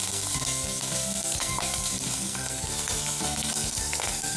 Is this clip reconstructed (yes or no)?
yes